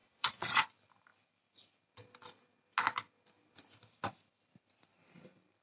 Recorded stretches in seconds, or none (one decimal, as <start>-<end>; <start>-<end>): 0.6-5.6